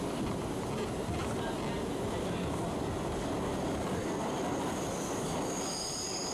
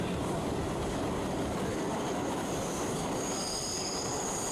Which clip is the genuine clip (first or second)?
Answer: first